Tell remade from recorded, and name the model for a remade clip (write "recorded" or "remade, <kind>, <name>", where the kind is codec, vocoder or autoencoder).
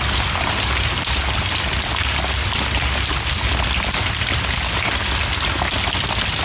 recorded